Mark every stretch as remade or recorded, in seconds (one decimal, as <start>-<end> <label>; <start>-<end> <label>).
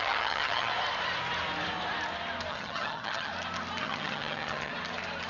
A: 0.0-0.7 remade; 0.7-2.5 recorded; 2.5-3.3 remade; 3.3-3.8 recorded; 3.8-4.7 remade; 4.7-5.3 recorded